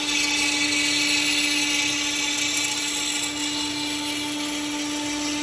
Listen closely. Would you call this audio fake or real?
real